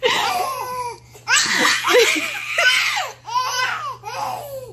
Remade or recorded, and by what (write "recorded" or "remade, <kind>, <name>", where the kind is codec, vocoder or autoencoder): recorded